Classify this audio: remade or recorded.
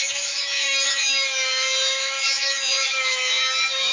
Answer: remade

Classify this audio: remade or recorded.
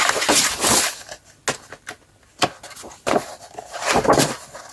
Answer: recorded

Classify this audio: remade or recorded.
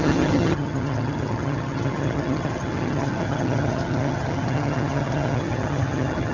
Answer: remade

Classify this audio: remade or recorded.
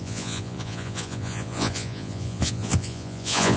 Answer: remade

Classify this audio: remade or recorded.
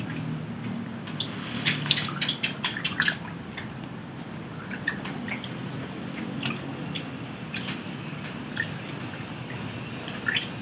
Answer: recorded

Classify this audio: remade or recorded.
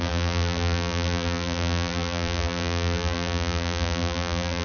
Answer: remade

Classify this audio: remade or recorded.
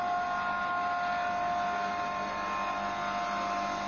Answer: recorded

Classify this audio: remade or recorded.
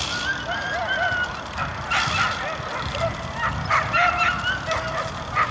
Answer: recorded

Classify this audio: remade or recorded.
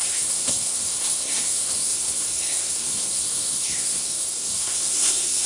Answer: remade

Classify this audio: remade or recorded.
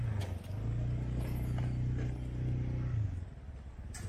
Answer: recorded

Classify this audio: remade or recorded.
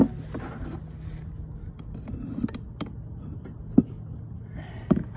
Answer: recorded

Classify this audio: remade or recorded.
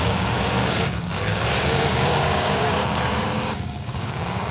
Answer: remade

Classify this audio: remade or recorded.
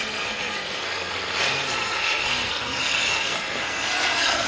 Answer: remade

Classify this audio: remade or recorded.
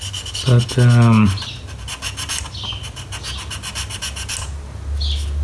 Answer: recorded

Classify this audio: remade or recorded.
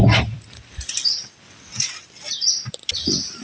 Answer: recorded